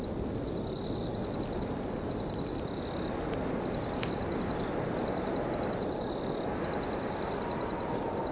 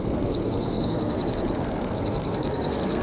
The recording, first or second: first